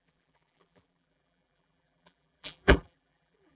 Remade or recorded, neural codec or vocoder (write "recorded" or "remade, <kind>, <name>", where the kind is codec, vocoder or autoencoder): remade, vocoder, BigVGAN v2